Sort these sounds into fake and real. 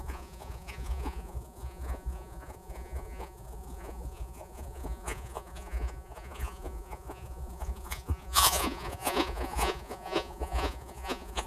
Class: fake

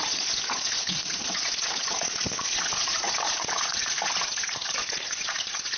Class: fake